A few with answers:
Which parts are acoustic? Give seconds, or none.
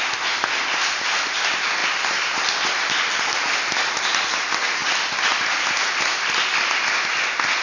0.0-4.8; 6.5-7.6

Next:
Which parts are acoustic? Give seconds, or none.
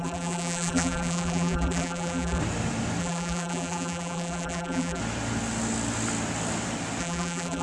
2.4-3.0; 5.0-7.0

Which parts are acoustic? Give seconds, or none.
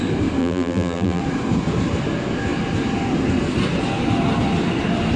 0.0-0.4; 1.2-5.2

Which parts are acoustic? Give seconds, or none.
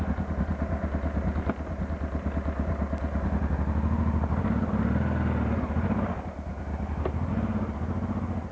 0.0-8.5